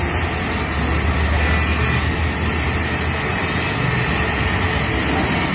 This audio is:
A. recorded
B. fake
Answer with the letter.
A